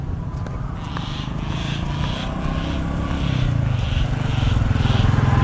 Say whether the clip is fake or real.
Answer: real